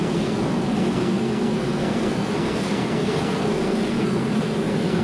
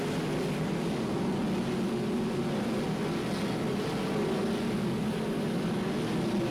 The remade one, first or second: first